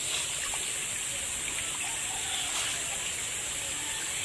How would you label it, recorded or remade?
recorded